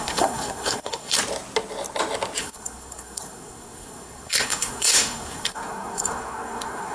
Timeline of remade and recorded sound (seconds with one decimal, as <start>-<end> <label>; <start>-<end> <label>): 0.0-1.2 remade; 1.2-2.4 recorded; 2.4-6.9 remade